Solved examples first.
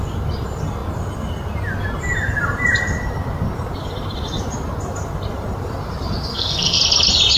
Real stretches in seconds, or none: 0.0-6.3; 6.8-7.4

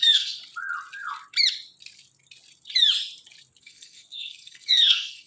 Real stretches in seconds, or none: 0.4-3.6

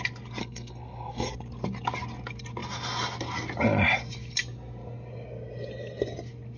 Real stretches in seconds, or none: 0.0-0.4; 1.3-6.6

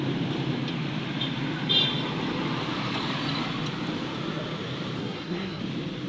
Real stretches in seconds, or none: 0.0-5.0; 5.6-6.1

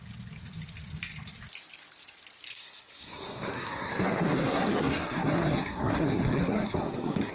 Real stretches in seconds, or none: 0.0-2.5